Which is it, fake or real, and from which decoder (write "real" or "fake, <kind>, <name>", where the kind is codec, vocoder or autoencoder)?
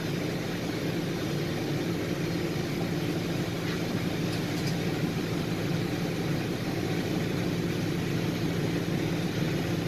real